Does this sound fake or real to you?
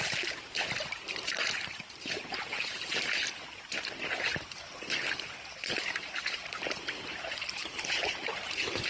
fake